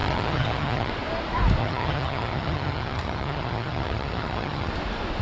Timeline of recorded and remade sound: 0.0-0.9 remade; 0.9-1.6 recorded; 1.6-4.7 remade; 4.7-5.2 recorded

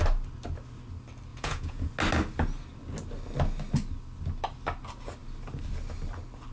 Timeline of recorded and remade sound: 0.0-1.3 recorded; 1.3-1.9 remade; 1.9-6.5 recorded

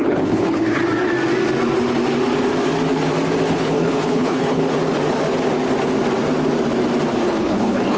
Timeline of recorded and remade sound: 0.0-0.8 remade; 0.8-3.5 recorded; 3.5-4.6 remade; 4.6-7.1 recorded; 7.1-8.0 remade

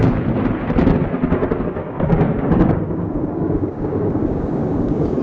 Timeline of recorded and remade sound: 0.0-1.8 recorded; 1.8-5.2 remade

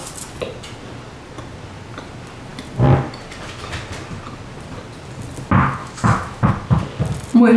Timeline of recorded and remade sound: 0.0-5.8 recorded; 5.8-6.5 remade; 6.5-7.6 recorded

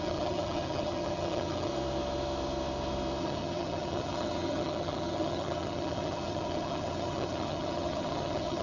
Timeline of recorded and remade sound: 0.0-1.7 remade; 1.7-3.2 recorded; 3.2-8.6 remade

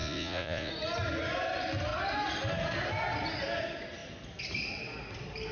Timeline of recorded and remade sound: 0.0-0.7 remade; 0.7-5.5 recorded

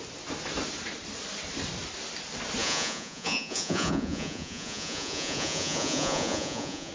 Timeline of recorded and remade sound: 0.0-2.6 recorded; 2.6-6.9 remade